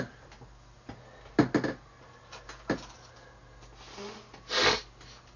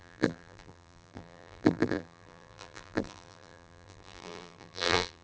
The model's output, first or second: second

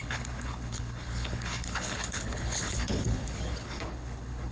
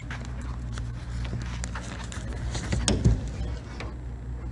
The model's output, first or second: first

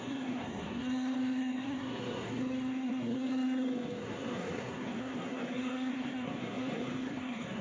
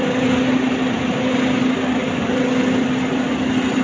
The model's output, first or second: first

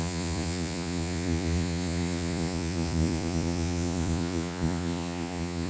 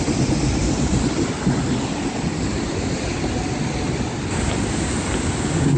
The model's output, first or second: first